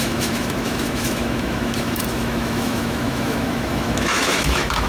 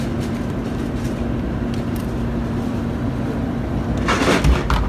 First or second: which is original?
second